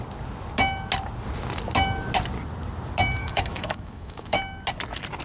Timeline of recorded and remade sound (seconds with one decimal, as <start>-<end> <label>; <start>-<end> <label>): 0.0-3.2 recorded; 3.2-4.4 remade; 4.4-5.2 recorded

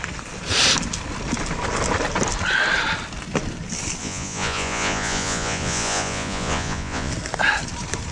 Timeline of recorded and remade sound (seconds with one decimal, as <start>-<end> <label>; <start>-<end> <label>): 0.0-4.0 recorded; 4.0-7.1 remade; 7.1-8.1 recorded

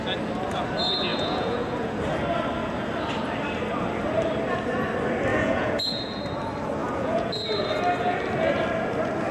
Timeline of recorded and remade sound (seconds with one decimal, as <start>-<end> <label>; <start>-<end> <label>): 0.0-1.1 recorded; 1.1-2.0 remade; 2.0-5.3 recorded; 5.3-6.2 remade; 6.2-6.8 recorded; 6.8-7.3 remade; 7.3-9.3 recorded

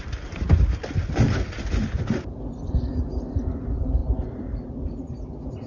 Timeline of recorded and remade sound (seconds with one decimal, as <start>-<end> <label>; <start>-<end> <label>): 0.0-5.7 recorded

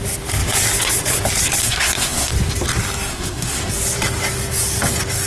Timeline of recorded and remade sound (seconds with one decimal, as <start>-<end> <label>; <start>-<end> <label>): 0.0-1.6 recorded; 1.6-2.3 remade; 2.3-3.1 recorded; 3.1-3.7 remade; 3.7-5.3 recorded

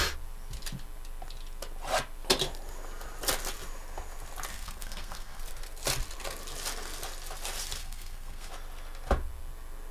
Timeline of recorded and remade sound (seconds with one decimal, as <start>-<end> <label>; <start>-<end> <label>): 0.0-4.5 recorded; 4.5-5.4 remade; 5.4-7.8 recorded; 7.8-8.5 remade; 8.5-9.9 recorded